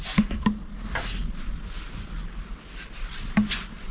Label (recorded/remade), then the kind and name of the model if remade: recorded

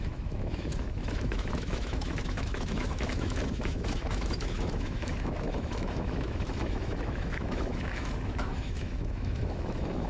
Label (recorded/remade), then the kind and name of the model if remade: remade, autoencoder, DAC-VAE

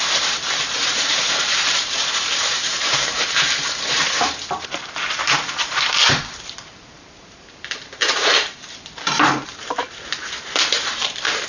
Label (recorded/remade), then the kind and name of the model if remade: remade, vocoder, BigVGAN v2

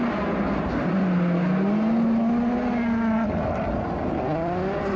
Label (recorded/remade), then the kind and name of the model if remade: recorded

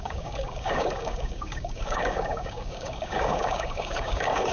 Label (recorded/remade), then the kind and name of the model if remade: remade, codec, DAC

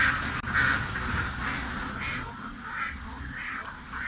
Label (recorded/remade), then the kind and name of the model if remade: recorded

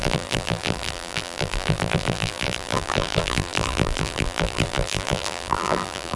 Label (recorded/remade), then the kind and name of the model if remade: remade, vocoder, BigVGAN v2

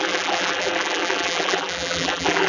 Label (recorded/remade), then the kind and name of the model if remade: remade, vocoder, BigVGAN v2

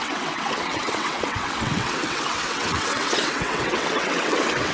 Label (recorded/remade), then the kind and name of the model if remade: remade, vocoder, WaveNeXt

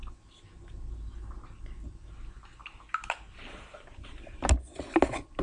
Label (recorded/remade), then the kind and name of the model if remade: recorded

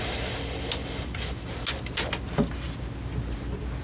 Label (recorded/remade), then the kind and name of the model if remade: recorded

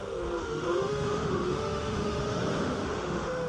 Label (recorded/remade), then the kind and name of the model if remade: remade, autoencoder, DAC-VAE